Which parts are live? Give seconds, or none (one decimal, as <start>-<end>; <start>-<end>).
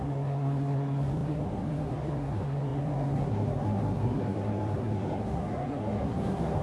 none